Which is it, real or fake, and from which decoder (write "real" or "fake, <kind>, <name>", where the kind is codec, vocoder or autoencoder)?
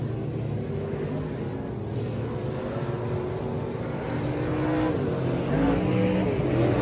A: real